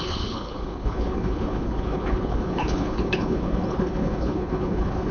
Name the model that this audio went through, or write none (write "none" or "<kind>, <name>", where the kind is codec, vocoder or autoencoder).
codec, HILCodec